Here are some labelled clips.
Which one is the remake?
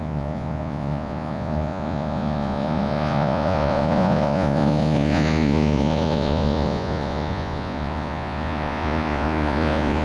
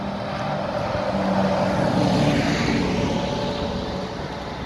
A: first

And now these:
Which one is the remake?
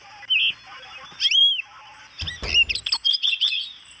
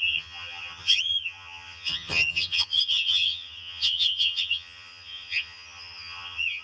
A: second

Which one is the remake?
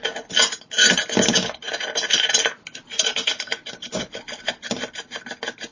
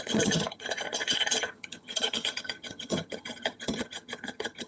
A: second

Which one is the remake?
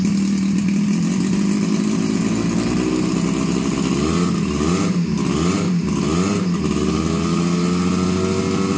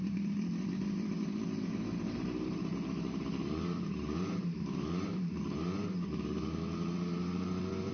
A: second